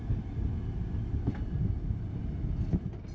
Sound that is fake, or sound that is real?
real